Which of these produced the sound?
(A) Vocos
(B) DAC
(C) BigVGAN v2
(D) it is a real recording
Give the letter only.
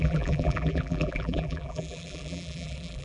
C